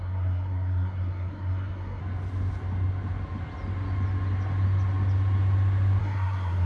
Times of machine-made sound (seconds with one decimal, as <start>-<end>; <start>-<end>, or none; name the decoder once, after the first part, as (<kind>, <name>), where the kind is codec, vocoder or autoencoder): 0.0-2.0 (codec, SNAC); 6.0-6.7